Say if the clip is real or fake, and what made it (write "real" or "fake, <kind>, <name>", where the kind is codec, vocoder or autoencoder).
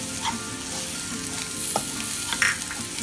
real